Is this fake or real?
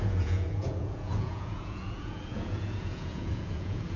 fake